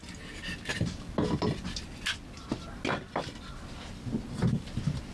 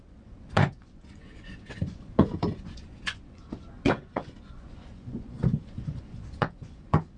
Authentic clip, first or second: first